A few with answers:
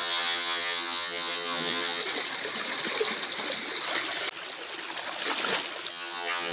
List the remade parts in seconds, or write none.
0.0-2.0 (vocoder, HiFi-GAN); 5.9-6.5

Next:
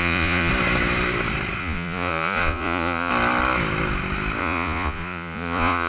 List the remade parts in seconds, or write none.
0.0-0.5 (vocoder, Vocos); 1.6-3.1; 4.4-5.9